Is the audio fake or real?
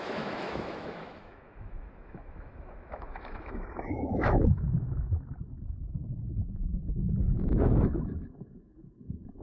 fake